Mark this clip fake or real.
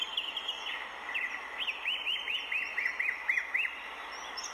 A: real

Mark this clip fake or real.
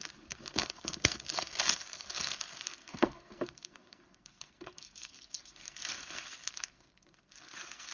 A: fake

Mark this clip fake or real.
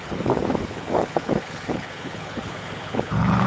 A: fake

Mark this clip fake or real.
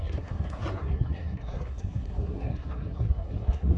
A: fake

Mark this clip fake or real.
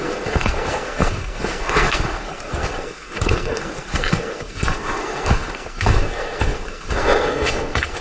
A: fake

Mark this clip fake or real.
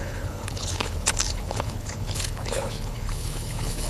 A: fake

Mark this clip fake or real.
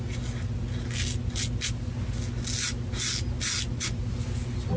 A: real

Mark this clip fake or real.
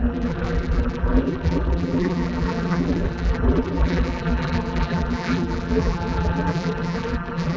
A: fake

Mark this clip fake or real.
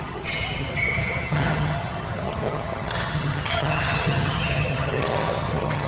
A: fake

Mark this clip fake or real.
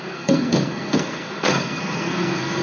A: fake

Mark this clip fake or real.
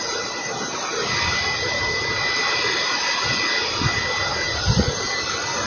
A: real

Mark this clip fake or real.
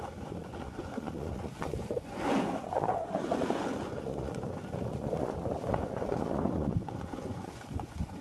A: fake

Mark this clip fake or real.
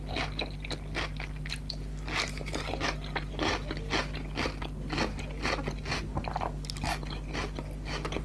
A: real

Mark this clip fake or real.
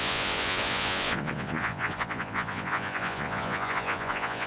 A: fake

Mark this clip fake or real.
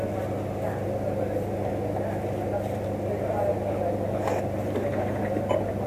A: real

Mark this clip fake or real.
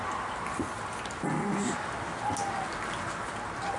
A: real